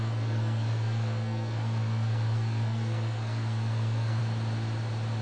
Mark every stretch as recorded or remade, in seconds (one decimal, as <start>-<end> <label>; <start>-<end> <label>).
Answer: 0.0-4.2 remade; 4.2-5.2 recorded

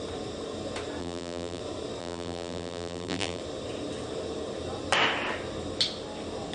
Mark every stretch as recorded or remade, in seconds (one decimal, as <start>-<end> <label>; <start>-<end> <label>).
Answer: 0.0-1.0 recorded; 1.0-1.6 remade; 1.6-2.0 recorded; 2.0-3.4 remade; 3.4-6.5 recorded